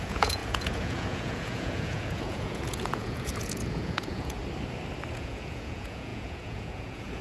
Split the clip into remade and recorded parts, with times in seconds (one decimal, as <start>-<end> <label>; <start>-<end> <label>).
0.0-4.4 remade; 4.4-5.1 recorded; 5.1-7.2 remade